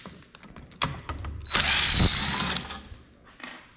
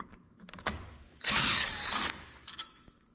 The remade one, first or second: second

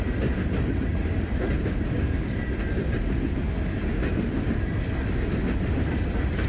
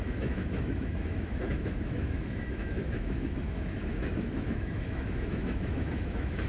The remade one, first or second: second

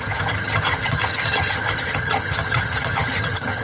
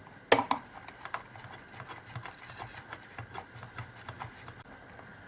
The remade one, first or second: first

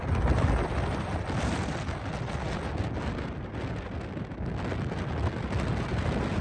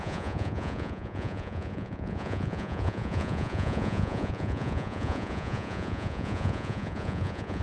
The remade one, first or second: second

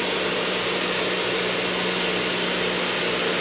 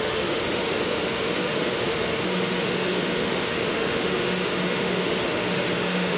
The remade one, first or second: second